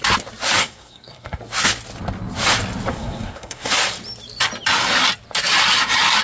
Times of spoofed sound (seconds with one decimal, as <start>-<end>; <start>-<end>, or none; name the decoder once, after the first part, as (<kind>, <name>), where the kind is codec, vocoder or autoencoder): 0.6-1.4 (codec, SNAC); 2.9-3.7